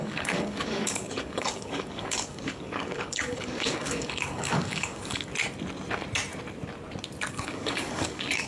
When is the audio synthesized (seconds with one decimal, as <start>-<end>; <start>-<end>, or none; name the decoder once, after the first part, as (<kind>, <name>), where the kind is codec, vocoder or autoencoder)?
0.0-5.3 (codec, DAC); 7.3-8.5

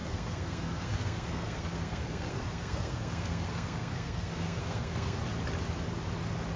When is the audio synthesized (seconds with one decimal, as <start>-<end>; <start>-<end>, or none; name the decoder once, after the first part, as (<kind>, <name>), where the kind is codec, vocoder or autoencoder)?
0.0-5.2 (codec, SNAC)

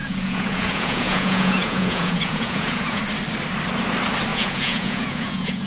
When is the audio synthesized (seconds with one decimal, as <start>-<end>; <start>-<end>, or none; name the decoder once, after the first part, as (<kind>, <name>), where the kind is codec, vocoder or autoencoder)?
0.0-3.0 (vocoder, Vocos); 4.3-5.7

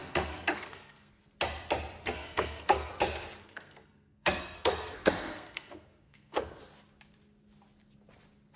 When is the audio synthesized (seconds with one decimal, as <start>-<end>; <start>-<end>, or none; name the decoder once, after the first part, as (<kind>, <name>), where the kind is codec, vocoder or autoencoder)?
0.0-1.2 (codec, SNAC); 2.0-2.9; 3.4-6.6

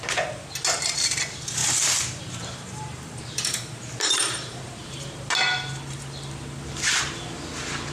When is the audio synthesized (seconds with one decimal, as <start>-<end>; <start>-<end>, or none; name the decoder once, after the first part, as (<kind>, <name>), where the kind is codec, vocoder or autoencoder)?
1.6-5.3 (vocoder, BigVGAN v2)